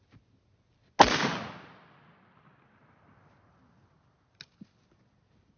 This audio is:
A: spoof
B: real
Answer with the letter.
B